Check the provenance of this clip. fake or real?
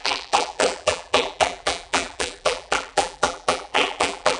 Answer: fake